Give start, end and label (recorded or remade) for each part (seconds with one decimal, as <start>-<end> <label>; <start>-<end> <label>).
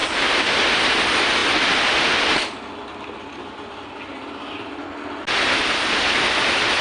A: 0.0-6.8 recorded